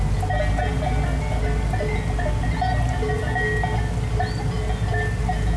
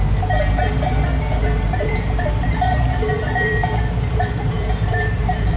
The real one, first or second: first